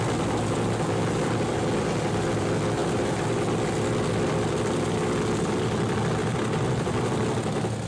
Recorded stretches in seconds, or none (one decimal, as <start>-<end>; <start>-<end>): 0.0-2.8; 3.5-7.9